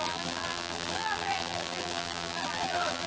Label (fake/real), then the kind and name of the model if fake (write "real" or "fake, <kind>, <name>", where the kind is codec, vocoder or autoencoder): fake, vocoder, BigVGAN v2